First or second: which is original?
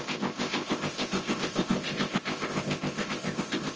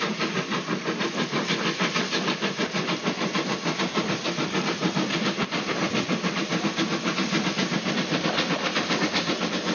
second